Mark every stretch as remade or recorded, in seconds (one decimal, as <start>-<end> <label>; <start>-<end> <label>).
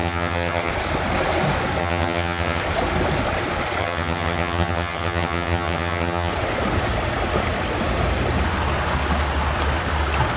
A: 0.0-0.7 remade; 0.7-1.8 recorded; 1.8-2.6 remade; 2.6-3.8 recorded; 3.8-6.3 remade; 6.3-10.4 recorded